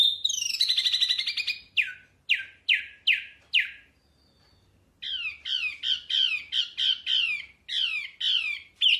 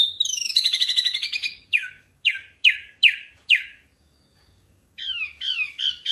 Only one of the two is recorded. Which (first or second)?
first